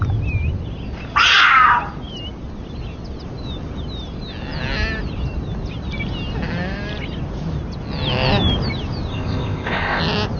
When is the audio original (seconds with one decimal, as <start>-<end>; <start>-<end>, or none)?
0.0-9.1; 10.0-10.4